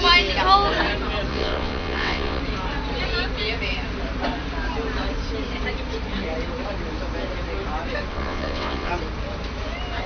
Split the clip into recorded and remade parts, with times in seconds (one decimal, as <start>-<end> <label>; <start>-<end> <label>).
0.0-1.3 recorded; 1.3-2.4 remade; 2.4-8.1 recorded; 8.1-8.9 remade; 8.9-10.1 recorded